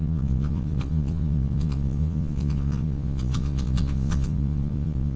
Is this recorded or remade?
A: remade